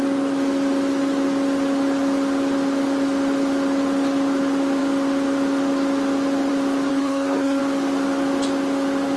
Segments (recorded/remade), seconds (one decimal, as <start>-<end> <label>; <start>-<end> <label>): 0.0-6.9 recorded; 6.9-7.6 remade; 7.6-9.2 recorded

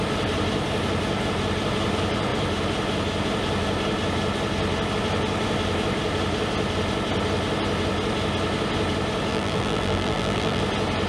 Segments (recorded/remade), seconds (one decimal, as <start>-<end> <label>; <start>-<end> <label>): 0.0-9.3 recorded; 9.3-10.6 remade; 10.6-11.1 recorded

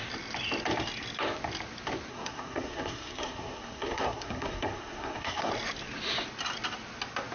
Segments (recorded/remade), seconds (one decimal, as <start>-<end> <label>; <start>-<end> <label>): 0.0-2.1 recorded; 2.1-5.5 remade; 5.5-7.3 recorded